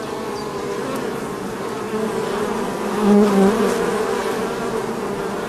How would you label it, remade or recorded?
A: recorded